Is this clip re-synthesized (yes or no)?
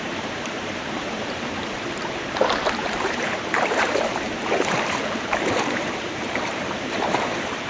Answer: yes